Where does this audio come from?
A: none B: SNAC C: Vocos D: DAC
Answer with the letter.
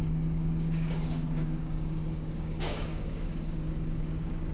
D